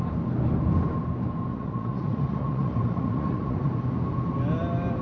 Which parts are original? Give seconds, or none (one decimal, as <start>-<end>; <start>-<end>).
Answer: 0.0-1.5; 3.7-5.0